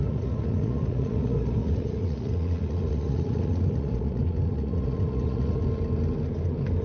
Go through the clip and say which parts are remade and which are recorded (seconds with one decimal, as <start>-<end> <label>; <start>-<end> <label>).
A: 0.0-5.6 remade; 5.6-6.8 recorded